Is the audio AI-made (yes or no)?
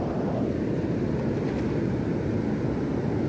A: no